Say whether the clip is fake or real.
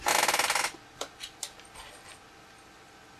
real